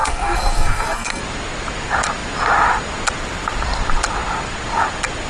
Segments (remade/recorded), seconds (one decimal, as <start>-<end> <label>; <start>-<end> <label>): 0.0-1.2 remade; 1.2-5.3 recorded